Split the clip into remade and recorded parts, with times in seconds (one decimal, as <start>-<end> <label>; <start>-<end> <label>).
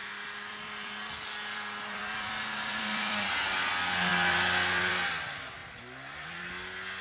0.0-3.3 remade; 3.3-4.1 recorded; 4.1-4.9 remade; 4.9-5.6 recorded; 5.6-6.4 remade; 6.4-7.0 recorded